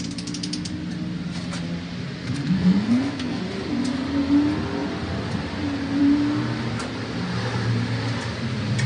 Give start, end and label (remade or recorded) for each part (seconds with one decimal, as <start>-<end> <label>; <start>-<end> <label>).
0.0-2.2 recorded; 2.2-3.4 remade; 3.4-8.9 recorded

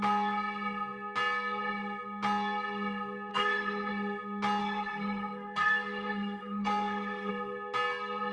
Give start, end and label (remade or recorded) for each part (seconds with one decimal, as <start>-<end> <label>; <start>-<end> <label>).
0.0-3.3 recorded; 3.3-3.9 remade; 3.9-4.6 recorded; 4.6-7.3 remade; 7.3-8.3 recorded

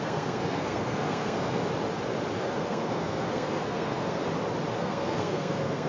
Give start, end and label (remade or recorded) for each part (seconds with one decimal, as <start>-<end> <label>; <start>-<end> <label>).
0.0-1.6 remade; 1.6-2.4 recorded; 2.4-4.2 remade; 4.2-4.8 recorded; 4.8-5.9 remade

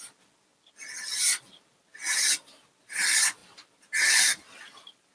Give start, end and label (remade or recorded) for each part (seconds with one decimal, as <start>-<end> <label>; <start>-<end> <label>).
0.0-5.1 recorded

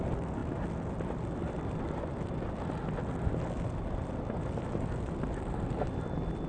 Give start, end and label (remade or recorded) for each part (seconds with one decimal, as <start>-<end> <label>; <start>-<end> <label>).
0.0-6.5 recorded